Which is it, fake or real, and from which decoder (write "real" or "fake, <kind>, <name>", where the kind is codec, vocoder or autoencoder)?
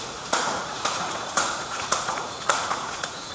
fake, vocoder, Vocos